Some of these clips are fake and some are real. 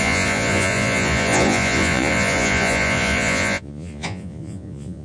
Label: fake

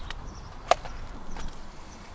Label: real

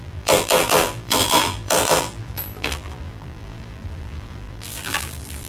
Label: fake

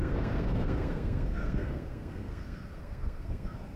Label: fake